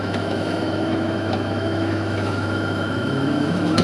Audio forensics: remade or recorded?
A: remade